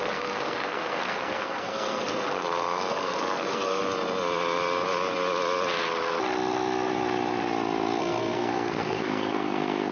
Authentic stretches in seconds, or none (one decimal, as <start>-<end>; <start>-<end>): 3.8-8.0

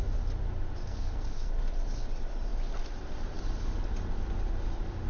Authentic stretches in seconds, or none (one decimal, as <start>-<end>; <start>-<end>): 0.0-0.8; 1.5-5.1

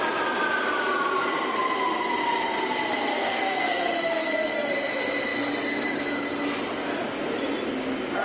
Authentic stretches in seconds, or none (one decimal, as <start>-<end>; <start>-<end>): 0.0-3.1; 4.7-8.2

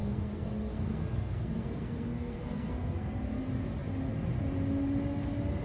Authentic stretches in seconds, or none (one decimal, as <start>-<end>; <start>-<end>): 3.4-5.6

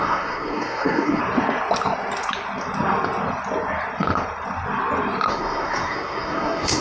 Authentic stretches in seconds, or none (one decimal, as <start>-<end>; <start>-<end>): 1.2-5.3

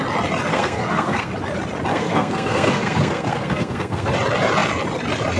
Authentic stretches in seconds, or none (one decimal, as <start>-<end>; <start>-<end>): 0.0-0.5; 1.3-1.9; 4.1-5.4